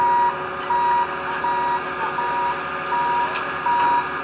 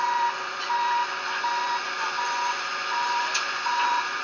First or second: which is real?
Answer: first